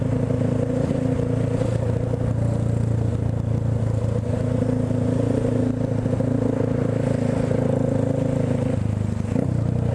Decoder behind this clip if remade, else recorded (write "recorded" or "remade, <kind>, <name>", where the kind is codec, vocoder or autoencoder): recorded